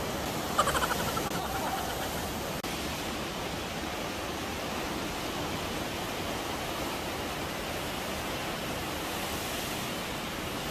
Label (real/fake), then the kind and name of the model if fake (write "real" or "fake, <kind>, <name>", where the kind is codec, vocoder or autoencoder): real